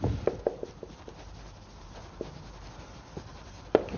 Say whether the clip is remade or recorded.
recorded